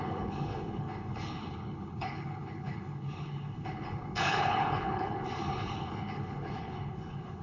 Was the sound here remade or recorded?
remade